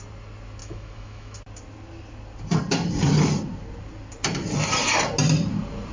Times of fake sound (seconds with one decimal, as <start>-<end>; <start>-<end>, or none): 0.6-1.4